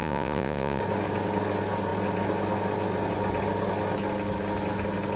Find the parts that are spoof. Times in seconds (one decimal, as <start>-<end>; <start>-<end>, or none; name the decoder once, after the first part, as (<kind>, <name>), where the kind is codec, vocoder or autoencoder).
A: 0.0-0.8 (vocoder, Vocos)